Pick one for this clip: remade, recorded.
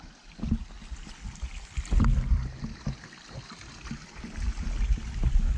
recorded